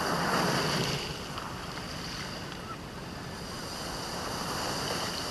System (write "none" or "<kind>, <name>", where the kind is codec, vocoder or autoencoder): vocoder, BigVGAN v2